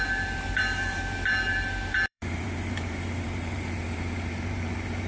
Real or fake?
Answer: fake